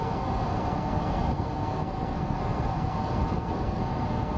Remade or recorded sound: remade